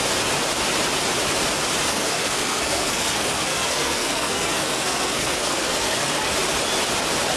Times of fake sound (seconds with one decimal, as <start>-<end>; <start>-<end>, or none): 1.9-6.3